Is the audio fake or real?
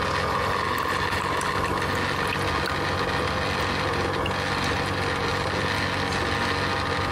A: real